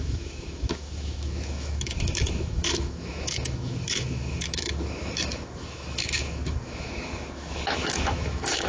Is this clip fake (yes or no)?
yes